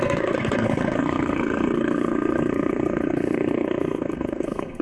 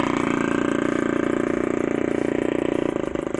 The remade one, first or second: first